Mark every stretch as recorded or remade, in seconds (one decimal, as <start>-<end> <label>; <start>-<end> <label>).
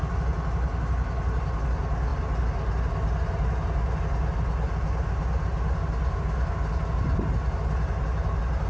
0.0-8.7 recorded